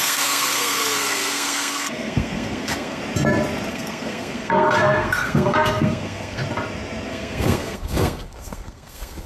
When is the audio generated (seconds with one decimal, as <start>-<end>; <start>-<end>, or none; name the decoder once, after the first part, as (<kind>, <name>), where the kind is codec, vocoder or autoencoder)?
0.0-3.0 (codec, SNAC); 3.7-6.4; 7.1-9.3